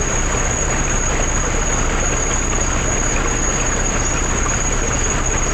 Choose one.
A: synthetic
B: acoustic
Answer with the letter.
B